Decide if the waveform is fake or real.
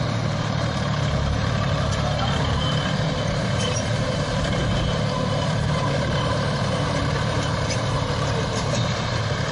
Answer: fake